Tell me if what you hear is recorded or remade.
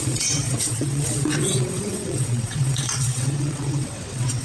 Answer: remade